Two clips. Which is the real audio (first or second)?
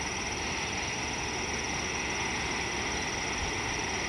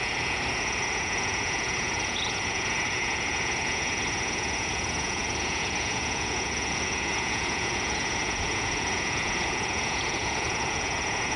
first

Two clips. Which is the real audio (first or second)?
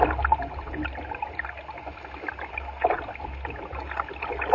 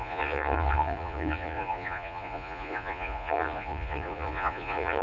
first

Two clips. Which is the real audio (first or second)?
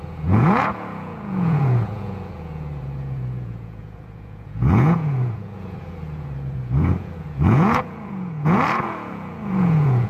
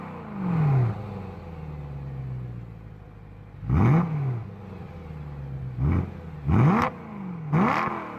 second